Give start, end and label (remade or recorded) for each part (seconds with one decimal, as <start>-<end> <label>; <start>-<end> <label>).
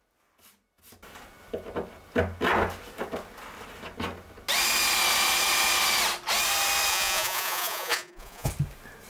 0.0-6.9 recorded; 6.9-8.5 remade; 8.5-9.1 recorded